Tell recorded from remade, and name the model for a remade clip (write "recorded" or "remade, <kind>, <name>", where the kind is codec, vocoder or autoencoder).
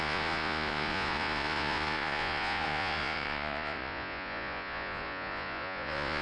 remade, vocoder, Vocos